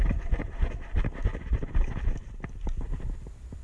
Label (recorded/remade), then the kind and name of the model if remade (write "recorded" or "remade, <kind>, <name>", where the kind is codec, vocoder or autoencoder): recorded